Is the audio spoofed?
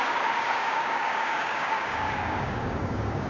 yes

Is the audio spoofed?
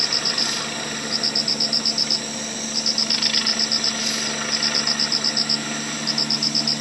no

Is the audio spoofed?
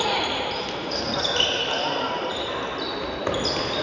yes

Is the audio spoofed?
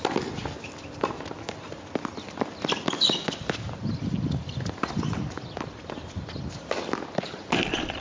no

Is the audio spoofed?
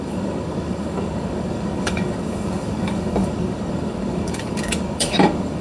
yes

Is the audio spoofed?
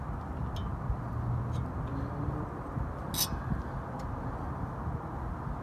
no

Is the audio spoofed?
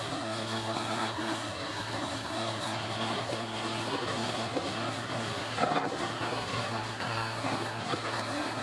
yes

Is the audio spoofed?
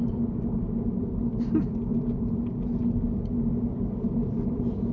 no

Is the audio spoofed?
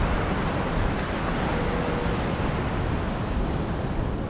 no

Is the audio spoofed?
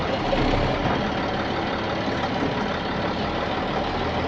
no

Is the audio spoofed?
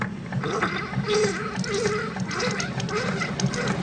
no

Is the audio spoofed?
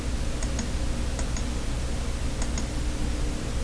no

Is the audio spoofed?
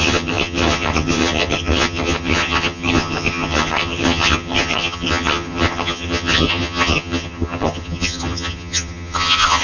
yes